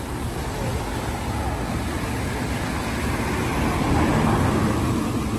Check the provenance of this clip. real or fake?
real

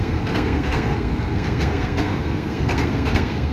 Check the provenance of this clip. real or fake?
fake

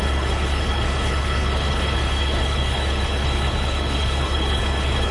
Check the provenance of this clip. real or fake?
fake